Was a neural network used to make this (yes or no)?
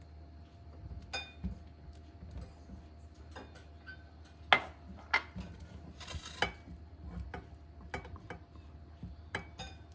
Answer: no